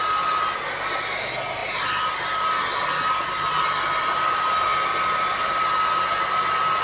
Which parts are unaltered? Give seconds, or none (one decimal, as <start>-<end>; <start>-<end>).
0.0-1.6; 2.1-4.7; 5.5-6.8